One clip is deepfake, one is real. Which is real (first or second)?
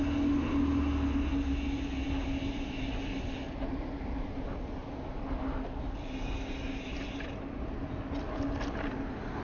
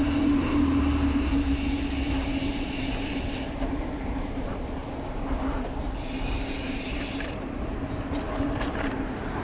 first